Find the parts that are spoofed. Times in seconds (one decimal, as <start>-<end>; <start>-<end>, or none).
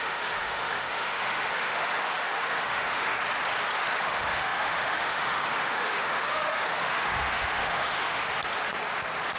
0.0-3.1; 4.0-8.2